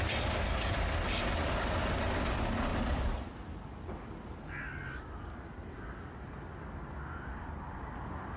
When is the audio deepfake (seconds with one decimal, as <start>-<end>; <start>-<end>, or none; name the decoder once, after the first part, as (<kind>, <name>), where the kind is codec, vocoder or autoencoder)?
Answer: none